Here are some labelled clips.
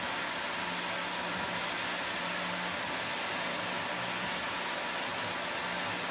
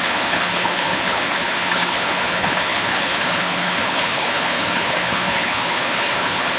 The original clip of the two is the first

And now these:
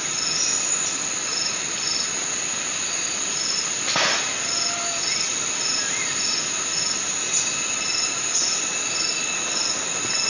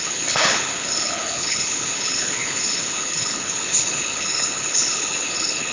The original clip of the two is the first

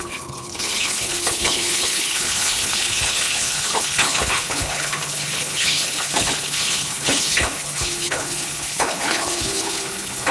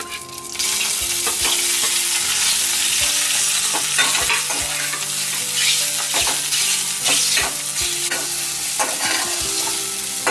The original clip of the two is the second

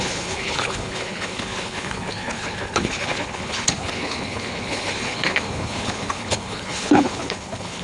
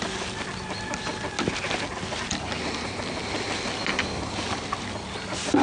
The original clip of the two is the second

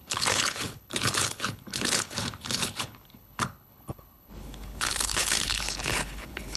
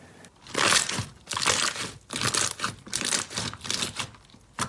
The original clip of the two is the second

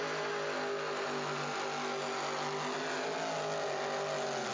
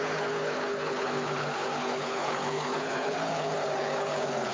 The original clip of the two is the first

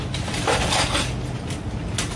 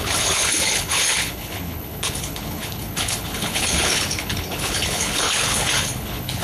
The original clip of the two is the first